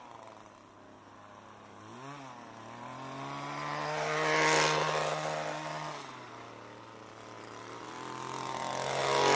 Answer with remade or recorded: recorded